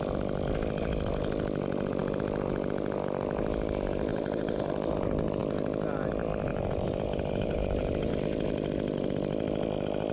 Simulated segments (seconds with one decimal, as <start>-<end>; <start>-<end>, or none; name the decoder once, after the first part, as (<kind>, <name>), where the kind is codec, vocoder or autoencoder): 4.1-4.7 (vocoder, BigVGAN v2); 6.5-8.1